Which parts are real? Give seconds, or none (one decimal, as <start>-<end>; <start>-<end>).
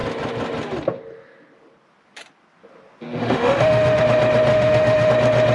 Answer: 0.0-3.2; 4.0-4.5; 5.1-5.5